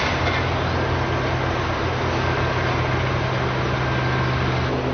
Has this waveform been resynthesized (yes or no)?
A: no